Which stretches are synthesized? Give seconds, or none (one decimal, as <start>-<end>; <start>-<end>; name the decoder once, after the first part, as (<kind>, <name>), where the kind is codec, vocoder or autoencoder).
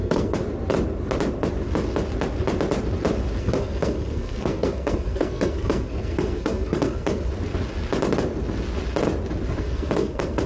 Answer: 0.0-0.4 (codec, SNAC); 3.4-7.3; 9.6-10.5